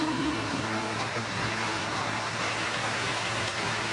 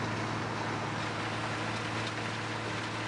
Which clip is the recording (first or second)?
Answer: second